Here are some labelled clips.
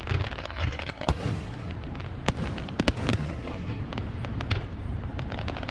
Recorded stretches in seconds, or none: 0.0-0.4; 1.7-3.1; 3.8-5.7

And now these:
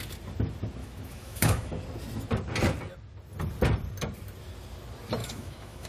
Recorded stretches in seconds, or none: 0.0-0.8; 1.7-5.2

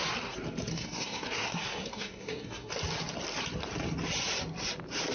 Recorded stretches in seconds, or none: 0.0-0.7; 2.7-5.1

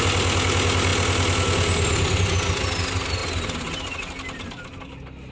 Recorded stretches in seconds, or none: 0.0-5.3

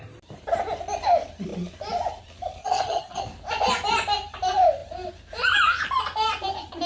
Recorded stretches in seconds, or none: 0.0-2.6; 3.2-6.9